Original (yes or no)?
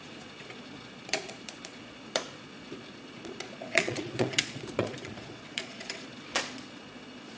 no